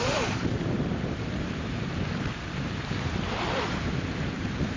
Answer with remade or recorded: remade